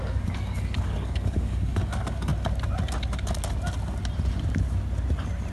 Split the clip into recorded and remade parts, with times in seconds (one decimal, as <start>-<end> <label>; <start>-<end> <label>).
0.0-2.3 remade; 2.3-5.5 recorded